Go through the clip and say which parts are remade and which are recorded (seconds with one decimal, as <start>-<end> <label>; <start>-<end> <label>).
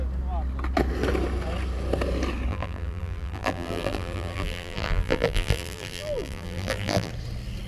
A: 0.0-2.5 recorded; 2.5-7.1 remade; 7.1-7.7 recorded